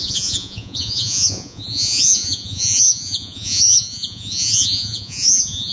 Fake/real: fake